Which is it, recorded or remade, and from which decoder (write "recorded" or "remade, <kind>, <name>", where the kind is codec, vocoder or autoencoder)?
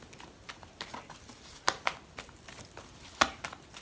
recorded